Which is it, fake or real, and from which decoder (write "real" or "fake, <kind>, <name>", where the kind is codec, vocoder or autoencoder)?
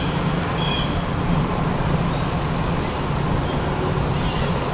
real